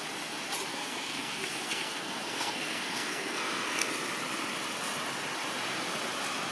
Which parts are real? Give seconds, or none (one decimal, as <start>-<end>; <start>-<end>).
0.0-0.7; 3.9-6.5